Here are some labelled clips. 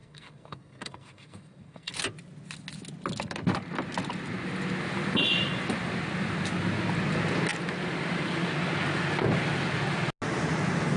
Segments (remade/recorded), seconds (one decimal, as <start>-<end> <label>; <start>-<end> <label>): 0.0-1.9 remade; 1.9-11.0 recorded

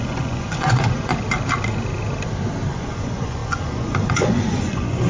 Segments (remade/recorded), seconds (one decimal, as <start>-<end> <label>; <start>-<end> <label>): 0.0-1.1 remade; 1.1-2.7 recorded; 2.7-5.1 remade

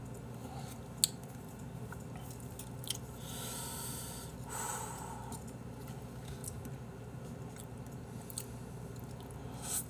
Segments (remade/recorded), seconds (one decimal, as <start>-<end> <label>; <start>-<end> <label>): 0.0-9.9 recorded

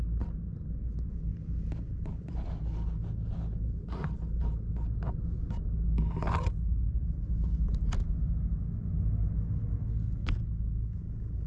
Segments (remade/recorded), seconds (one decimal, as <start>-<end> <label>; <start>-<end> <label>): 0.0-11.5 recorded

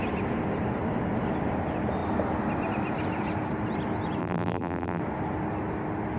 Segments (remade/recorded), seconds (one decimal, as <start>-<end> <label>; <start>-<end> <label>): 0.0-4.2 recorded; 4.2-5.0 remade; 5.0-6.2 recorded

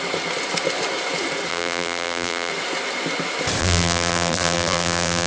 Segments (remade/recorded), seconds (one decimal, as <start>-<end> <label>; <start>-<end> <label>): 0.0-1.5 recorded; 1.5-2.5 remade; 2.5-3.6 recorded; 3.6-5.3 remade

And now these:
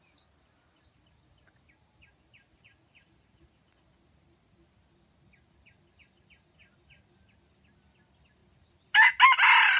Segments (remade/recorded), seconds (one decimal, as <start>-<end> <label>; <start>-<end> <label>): 0.0-9.8 recorded

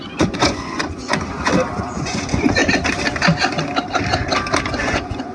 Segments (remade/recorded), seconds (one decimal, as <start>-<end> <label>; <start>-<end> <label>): 0.0-1.5 remade; 1.5-2.0 recorded; 2.0-2.6 remade; 2.6-4.6 recorded; 4.6-5.3 remade